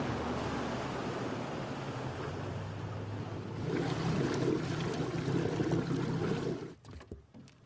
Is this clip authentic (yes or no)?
yes